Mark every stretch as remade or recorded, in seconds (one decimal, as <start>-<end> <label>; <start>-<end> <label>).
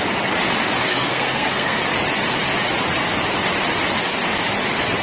0.0-0.9 recorded; 0.9-1.8 remade; 1.8-5.0 recorded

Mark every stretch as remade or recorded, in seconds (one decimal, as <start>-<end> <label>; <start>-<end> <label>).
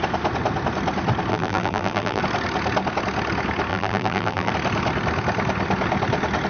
0.0-1.3 recorded; 1.3-2.2 remade; 2.2-3.7 recorded; 3.7-4.5 remade; 4.5-6.5 recorded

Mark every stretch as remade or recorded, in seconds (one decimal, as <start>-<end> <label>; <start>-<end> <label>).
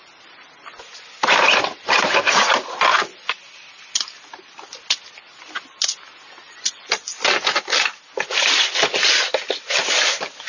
0.0-10.5 recorded